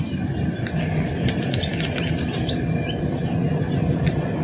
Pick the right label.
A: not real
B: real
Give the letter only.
A